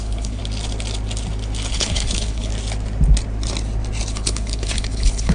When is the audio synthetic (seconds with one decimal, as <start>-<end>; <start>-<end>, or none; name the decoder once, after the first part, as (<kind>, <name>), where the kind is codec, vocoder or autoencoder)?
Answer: 0.0-0.4 (codec, HILCodec); 1.7-2.5; 4.1-5.3

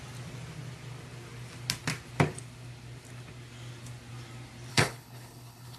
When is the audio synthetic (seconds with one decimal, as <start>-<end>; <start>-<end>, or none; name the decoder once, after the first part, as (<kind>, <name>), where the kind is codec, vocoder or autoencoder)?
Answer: 4.7-5.8 (codec, HILCodec)

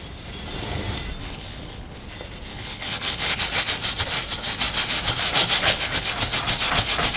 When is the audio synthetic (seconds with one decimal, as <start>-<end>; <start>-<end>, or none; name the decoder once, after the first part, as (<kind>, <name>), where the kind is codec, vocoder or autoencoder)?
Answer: 1.2-2.0 (codec, HILCodec); 2.5-3.4; 5.6-6.1

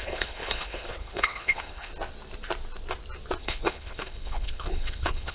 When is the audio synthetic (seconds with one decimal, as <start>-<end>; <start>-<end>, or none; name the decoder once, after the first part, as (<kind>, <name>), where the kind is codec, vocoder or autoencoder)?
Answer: 0.0-1.9 (codec, HILCodec); 3.4-5.3

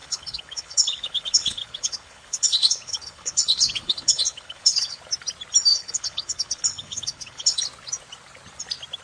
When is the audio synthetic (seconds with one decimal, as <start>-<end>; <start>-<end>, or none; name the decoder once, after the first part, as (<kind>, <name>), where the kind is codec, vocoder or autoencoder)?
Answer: 0.0-5.0 (codec, HILCodec); 5.7-7.6